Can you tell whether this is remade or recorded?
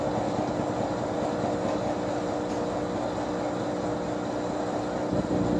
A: recorded